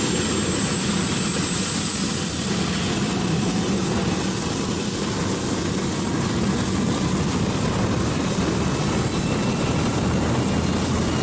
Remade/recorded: recorded